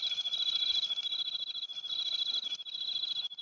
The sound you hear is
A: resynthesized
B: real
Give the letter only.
B